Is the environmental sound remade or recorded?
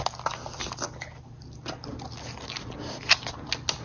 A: recorded